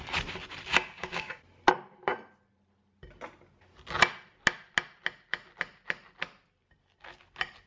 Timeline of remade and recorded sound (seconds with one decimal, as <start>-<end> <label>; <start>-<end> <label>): 0.0-0.7 recorded; 0.7-1.4 remade; 1.4-7.7 recorded